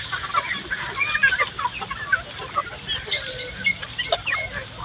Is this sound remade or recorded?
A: recorded